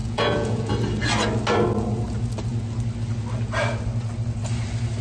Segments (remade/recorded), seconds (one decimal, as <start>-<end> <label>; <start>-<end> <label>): 0.0-0.7 remade; 0.7-5.0 recorded